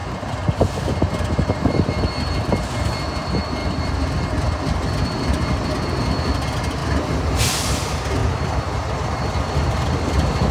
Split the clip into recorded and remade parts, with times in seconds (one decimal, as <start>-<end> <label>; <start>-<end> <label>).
0.0-3.6 recorded; 3.6-5.7 remade; 5.7-10.5 recorded